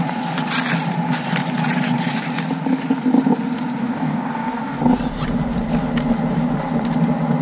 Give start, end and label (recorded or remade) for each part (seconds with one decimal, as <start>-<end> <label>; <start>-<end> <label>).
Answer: 0.0-3.8 recorded; 3.8-4.8 remade; 4.8-7.4 recorded